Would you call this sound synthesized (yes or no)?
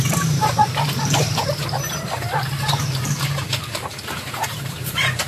yes